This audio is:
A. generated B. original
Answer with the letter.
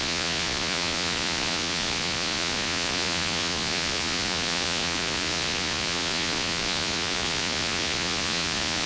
A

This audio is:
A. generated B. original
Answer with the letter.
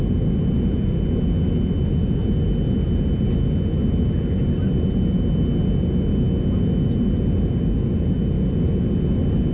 B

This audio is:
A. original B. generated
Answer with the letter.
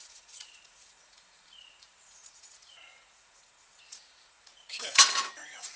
B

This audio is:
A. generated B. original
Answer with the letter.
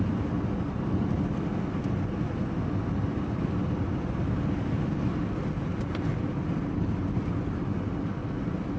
B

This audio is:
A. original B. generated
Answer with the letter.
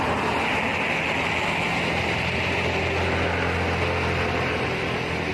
A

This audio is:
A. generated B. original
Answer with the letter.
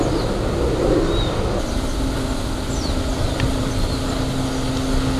B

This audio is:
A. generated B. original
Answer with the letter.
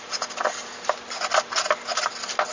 B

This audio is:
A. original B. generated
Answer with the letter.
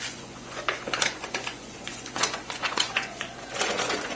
B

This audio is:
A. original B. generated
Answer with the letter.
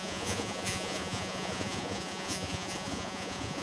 B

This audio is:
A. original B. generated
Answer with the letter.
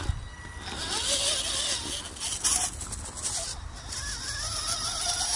A